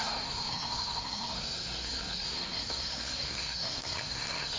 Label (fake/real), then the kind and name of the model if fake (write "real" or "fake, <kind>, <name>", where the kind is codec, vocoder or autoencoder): fake, codec, SNAC